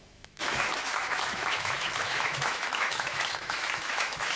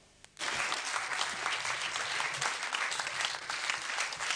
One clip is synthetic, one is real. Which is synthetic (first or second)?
first